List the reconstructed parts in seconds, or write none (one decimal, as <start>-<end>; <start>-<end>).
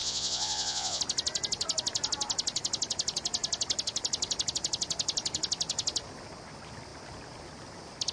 0.0-1.0